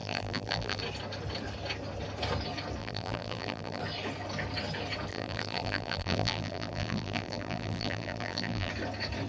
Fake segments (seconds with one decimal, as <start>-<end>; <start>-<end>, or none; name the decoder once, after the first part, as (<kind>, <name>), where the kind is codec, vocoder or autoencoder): 0.0-0.8 (vocoder, BigVGAN v2); 2.8-3.8; 5.1-8.7